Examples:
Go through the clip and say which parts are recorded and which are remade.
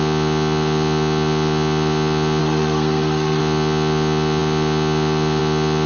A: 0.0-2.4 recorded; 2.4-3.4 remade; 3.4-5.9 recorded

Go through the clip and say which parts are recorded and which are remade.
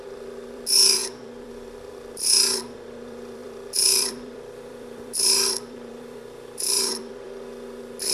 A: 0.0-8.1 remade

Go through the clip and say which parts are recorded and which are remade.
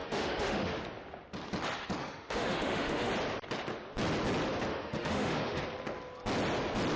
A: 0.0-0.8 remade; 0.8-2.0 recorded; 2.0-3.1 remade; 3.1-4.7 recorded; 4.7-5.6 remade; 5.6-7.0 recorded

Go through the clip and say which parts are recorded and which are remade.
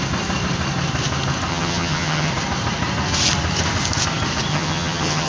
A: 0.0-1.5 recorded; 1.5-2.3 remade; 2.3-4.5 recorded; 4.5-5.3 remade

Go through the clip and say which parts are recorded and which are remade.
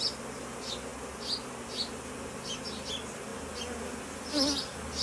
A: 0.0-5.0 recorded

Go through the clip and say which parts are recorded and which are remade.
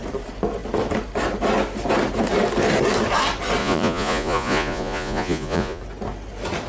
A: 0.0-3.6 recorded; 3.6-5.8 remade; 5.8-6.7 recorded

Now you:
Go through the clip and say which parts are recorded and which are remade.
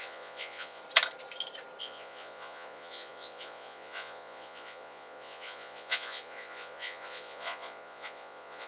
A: 0.0-0.8 remade; 0.8-1.8 recorded; 1.8-8.7 remade